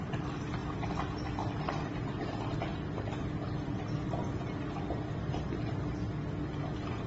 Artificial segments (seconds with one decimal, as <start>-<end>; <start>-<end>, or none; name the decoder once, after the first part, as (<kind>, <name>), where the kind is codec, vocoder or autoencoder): none